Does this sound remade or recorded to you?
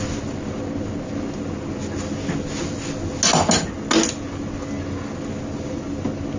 recorded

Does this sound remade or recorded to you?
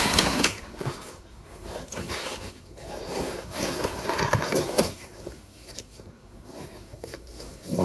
remade